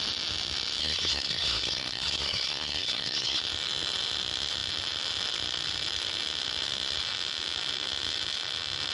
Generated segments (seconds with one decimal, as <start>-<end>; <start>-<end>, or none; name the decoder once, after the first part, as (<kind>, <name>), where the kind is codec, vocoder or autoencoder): 0.8-3.4 (codec, SNAC)